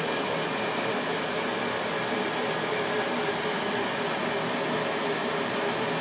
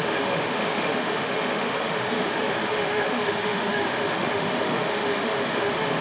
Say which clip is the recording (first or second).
first